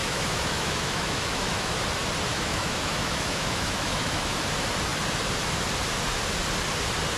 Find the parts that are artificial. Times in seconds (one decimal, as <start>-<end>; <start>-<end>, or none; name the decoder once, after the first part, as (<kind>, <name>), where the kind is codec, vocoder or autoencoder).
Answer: 0.0-1.8 (autoencoder, DAC-VAE); 2.3-4.4